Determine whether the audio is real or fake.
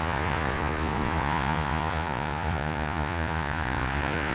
fake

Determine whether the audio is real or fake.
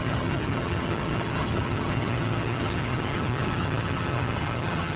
fake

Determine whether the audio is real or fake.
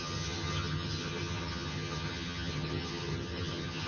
fake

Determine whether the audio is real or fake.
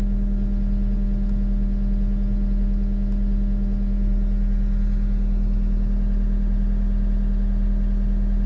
real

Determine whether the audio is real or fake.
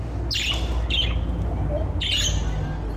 real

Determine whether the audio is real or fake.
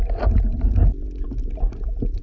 real